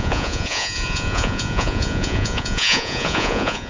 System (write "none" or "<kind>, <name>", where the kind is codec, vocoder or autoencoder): vocoder, Vocos